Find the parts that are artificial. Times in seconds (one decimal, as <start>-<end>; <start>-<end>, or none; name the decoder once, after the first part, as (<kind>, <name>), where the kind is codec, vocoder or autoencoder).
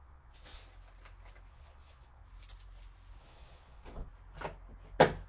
0.0-0.6 (vocoder, Vocos); 1.5-2.2; 3.2-4.1